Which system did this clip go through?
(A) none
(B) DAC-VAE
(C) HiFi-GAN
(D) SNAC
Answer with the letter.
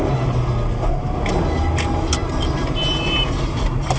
A